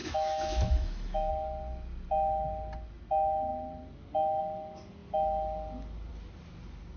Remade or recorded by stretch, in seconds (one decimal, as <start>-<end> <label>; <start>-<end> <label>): 0.0-1.3 remade; 1.3-7.0 recorded